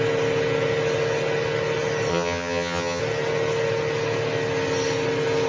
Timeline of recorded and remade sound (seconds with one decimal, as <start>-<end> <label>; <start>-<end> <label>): 0.0-2.1 recorded; 2.1-3.0 remade; 3.0-5.5 recorded